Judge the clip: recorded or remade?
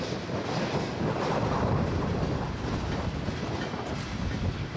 recorded